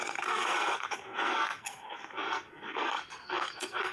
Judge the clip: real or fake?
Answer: fake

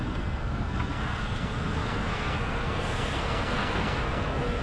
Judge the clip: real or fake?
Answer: fake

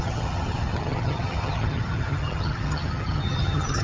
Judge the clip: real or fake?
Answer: fake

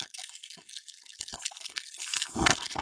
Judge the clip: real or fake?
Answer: fake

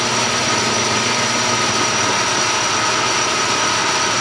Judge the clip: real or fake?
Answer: real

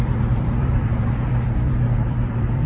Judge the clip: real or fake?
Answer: fake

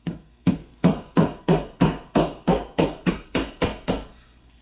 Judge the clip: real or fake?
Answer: fake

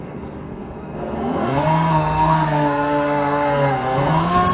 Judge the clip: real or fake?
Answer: fake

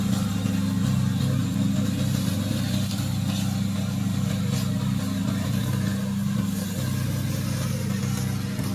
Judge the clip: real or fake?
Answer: real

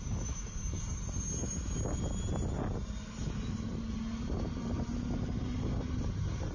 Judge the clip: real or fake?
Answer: real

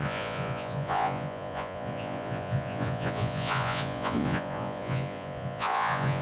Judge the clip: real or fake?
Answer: fake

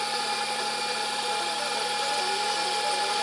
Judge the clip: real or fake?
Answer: real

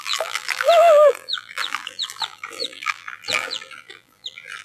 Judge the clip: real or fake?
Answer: fake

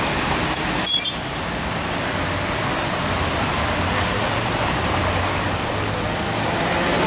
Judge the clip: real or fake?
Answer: real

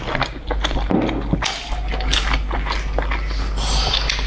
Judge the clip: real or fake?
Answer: real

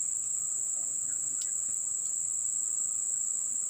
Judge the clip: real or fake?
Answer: real